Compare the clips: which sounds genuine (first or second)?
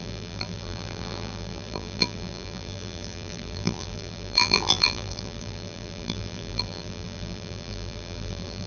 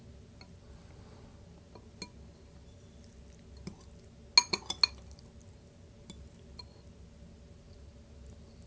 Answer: second